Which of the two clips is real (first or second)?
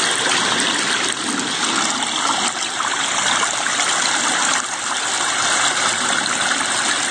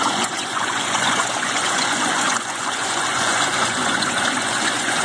first